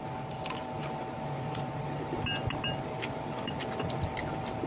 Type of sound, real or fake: real